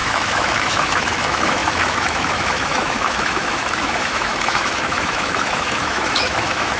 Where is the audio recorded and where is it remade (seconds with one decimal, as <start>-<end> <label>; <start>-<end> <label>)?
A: 0.0-6.8 remade

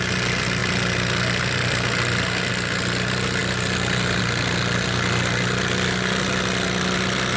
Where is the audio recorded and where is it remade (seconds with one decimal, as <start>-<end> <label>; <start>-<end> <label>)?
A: 0.0-7.4 recorded

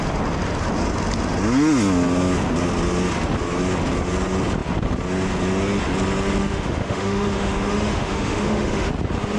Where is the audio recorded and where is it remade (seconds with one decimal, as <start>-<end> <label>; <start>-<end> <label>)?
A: 0.0-6.4 recorded; 6.4-8.9 remade; 8.9-9.4 recorded

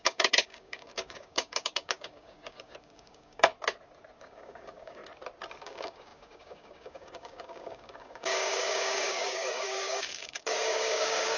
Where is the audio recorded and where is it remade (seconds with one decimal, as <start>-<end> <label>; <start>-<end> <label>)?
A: 0.0-3.5 remade; 3.5-4.2 recorded; 4.2-5.0 remade; 5.0-5.6 recorded; 5.6-11.4 remade

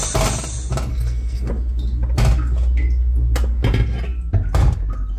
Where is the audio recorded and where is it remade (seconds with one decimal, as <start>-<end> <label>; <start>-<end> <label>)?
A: 0.0-0.9 recorded; 0.9-1.5 remade; 1.5-5.2 recorded

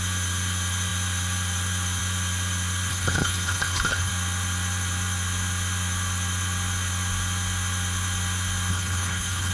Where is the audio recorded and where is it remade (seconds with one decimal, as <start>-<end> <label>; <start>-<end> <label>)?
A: 0.0-2.9 recorded; 2.9-4.1 remade; 4.1-8.7 recorded; 8.7-9.5 remade